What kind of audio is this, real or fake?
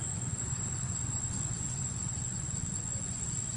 fake